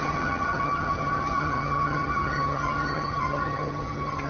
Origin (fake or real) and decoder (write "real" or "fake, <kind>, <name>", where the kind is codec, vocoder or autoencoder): fake, vocoder, HiFi-GAN